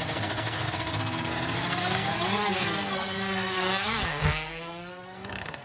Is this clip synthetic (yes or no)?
yes